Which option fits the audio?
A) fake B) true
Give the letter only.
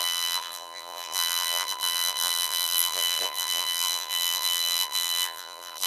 A